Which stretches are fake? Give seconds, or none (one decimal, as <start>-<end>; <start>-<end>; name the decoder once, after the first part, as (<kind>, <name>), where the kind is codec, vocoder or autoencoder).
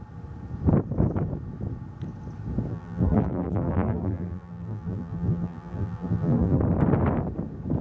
2.7-6.6 (vocoder, BigVGAN v2)